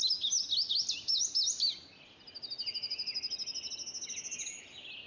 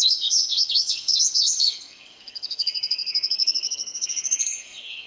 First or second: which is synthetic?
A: second